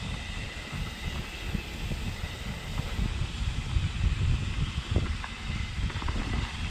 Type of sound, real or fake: real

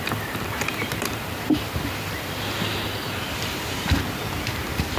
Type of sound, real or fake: fake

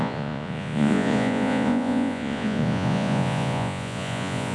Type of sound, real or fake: fake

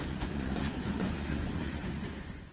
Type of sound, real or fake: fake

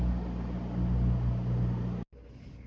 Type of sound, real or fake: real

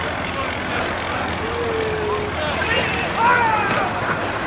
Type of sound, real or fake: real